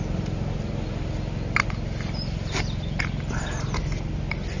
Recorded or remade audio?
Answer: recorded